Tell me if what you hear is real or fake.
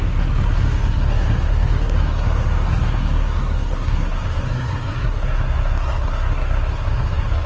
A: fake